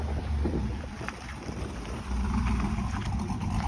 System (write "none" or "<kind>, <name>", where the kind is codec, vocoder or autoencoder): vocoder, BigVGAN v2